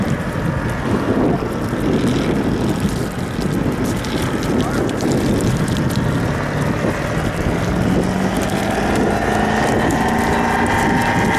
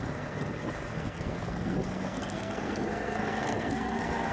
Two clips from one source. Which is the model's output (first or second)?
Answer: second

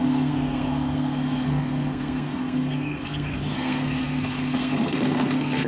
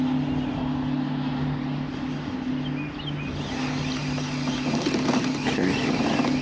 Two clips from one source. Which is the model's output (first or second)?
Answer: first